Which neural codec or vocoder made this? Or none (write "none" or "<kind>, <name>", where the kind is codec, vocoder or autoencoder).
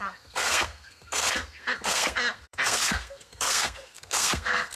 codec, SNAC